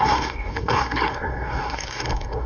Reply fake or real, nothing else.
fake